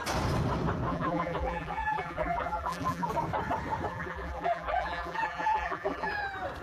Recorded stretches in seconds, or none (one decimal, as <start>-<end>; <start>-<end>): 0.0-0.9; 3.1-3.9; 6.1-6.6